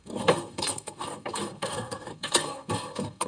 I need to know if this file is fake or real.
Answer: fake